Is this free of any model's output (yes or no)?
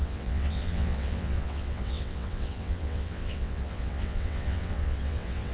no